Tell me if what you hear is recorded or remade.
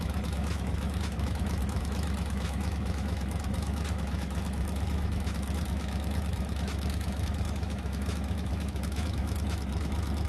remade